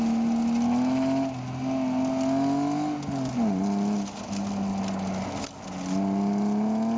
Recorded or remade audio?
recorded